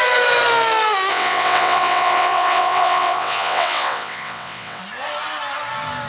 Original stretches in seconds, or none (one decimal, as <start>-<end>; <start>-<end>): 0.0-1.1; 4.8-6.1